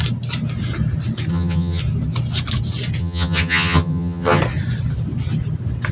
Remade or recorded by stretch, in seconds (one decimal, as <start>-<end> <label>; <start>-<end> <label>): 0.0-1.3 recorded; 1.3-1.8 remade; 1.8-3.0 recorded; 3.0-4.4 remade; 4.4-5.9 recorded